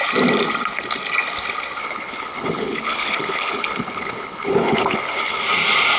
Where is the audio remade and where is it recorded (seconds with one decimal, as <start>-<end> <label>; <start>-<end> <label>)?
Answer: 0.0-1.8 recorded; 1.8-5.4 remade; 5.4-6.0 recorded